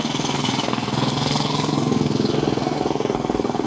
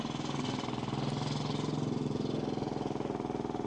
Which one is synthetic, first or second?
first